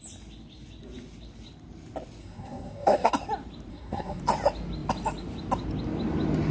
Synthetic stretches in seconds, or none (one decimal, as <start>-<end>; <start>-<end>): 2.2-3.1; 3.7-4.2